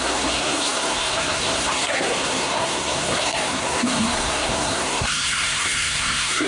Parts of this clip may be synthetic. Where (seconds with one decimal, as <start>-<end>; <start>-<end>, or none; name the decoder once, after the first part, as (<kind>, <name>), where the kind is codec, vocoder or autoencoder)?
0.0-6.5 (codec, SNAC)